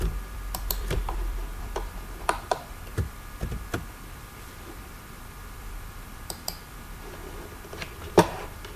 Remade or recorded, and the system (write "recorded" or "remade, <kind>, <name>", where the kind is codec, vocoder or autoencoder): remade, vocoder, BigVGAN v2